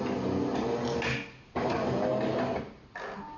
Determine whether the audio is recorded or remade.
recorded